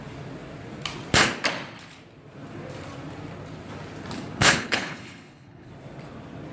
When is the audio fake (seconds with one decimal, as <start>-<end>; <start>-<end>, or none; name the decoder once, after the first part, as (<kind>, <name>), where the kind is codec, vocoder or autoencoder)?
4.4-5.7 (codec, HILCodec)